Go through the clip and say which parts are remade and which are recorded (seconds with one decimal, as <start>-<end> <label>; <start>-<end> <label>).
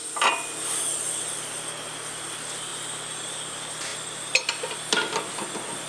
0.0-5.9 recorded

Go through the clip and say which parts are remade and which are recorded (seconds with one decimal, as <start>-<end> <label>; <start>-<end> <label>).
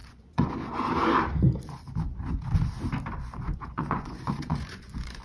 0.0-0.5 remade; 0.5-3.2 recorded; 3.2-5.2 remade